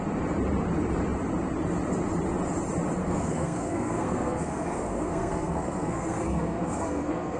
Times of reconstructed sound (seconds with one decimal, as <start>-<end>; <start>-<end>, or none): 3.0-7.4